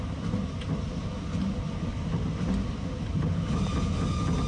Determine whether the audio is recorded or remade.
recorded